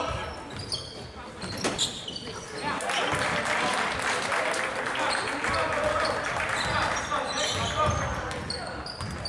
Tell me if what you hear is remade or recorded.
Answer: recorded